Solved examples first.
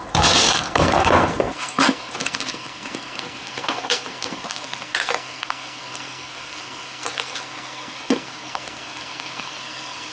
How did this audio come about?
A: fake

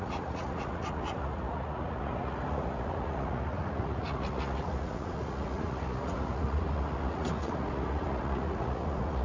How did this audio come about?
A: fake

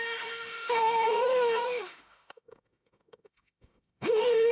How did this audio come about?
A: fake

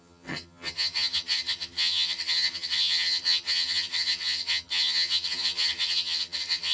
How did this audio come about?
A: fake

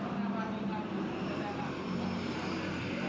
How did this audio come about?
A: fake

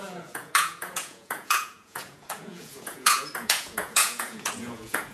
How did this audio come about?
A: fake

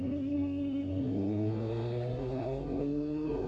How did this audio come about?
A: fake